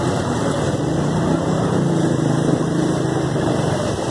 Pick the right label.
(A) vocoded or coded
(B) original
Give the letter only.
A